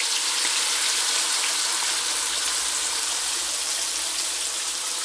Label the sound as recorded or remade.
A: recorded